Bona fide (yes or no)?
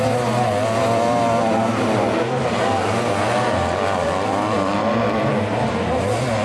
yes